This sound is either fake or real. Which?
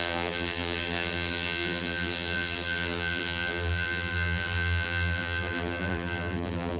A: fake